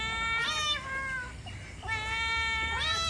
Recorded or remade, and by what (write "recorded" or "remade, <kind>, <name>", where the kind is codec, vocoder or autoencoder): recorded